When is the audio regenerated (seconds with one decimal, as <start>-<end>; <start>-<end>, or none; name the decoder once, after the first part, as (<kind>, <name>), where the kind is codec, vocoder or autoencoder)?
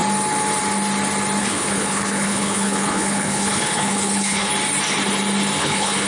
1.4-4.5 (codec, HILCodec); 5.6-6.1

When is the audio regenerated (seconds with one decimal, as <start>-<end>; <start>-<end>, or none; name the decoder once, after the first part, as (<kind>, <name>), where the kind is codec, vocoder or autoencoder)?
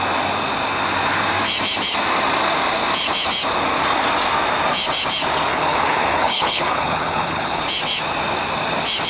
5.5-7.6 (codec, HILCodec)